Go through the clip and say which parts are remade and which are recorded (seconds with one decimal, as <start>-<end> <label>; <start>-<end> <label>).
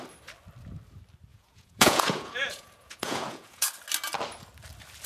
0.0-1.3 recorded; 1.3-3.7 remade; 3.7-5.1 recorded